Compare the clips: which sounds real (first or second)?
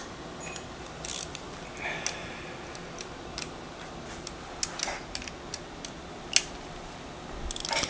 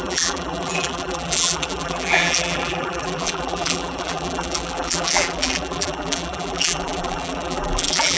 first